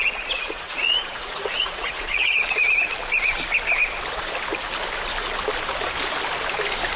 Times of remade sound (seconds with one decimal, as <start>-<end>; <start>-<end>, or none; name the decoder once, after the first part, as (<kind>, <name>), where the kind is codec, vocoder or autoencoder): 0.0-2.6 (vocoder, Vocos)